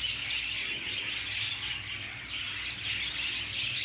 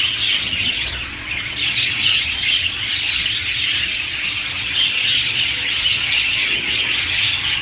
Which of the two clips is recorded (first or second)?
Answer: first